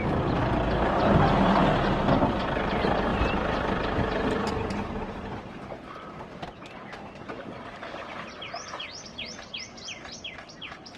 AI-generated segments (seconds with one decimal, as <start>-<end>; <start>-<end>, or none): 0.0-1.6; 2.3-11.0